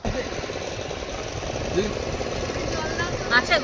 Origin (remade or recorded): recorded